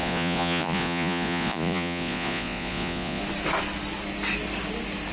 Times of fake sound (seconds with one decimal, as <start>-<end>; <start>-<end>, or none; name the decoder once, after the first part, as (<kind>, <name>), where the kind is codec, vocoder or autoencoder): 0.0-3.2 (vocoder, Vocos)